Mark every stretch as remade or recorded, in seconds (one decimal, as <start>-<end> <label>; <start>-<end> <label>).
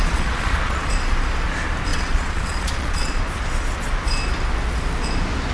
0.0-0.9 remade; 0.9-1.9 recorded; 1.9-3.2 remade; 3.2-5.5 recorded